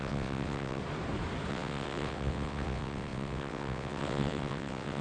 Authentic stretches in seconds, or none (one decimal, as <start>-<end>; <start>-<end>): 0.8-1.5